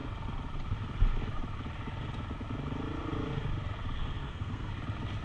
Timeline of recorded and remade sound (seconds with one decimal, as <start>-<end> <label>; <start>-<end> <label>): 0.0-4.0 recorded; 4.0-4.7 remade; 4.7-5.2 recorded